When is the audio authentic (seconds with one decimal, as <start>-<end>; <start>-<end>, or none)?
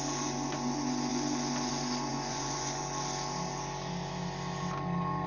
0.0-2.1; 2.8-5.3